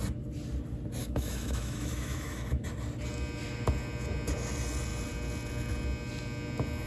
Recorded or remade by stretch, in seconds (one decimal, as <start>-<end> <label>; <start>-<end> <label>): 0.0-1.0 recorded; 1.0-2.6 remade; 2.6-6.9 recorded